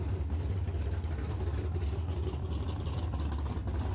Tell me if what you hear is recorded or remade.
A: recorded